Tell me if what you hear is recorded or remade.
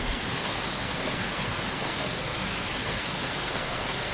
remade